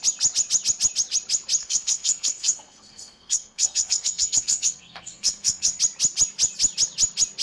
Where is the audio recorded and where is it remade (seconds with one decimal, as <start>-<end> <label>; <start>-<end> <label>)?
0.0-1.6 recorded; 1.6-5.8 remade; 5.8-7.4 recorded

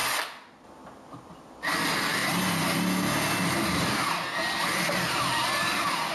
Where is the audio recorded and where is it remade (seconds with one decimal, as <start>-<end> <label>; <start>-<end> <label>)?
0.0-6.1 recorded

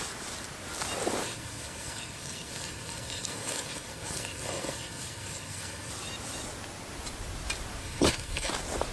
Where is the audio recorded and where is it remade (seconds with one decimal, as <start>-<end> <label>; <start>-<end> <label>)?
0.0-1.2 recorded; 1.2-5.9 remade; 5.9-7.8 recorded; 7.8-8.5 remade; 8.5-8.9 recorded

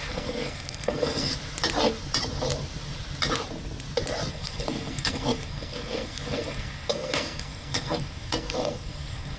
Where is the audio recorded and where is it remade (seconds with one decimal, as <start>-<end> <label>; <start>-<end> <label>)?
0.0-1.3 remade; 1.3-4.3 recorded; 4.3-9.4 remade

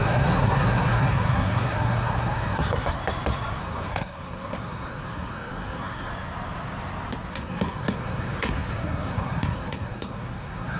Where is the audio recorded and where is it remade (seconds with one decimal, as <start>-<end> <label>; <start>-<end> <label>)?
0.0-3.0 remade; 3.0-3.6 recorded; 3.6-6.1 remade; 6.1-7.3 recorded; 7.3-10.8 remade

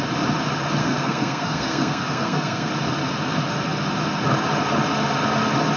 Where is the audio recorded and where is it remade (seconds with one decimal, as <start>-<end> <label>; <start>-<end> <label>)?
0.0-0.8 recorded; 0.8-2.7 remade; 2.7-5.8 recorded

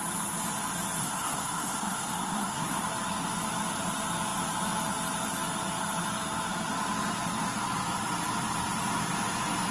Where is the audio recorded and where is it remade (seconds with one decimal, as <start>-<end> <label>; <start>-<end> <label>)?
0.0-1.0 recorded; 1.0-2.8 remade; 2.8-9.7 recorded

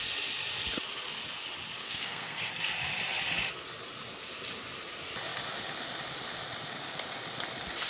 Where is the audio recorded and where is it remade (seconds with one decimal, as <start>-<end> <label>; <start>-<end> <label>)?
0.0-1.8 recorded; 1.8-2.5 remade; 2.5-7.9 recorded